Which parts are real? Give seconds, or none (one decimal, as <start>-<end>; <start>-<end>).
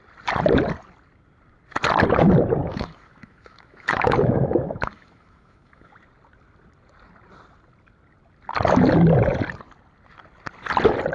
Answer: 0.0-2.6; 5.9-11.1